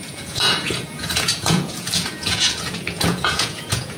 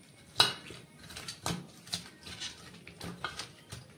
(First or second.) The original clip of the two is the second